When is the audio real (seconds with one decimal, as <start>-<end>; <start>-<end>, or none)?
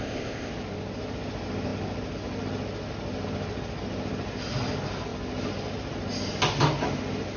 0.5-7.4